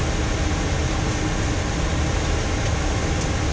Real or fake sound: real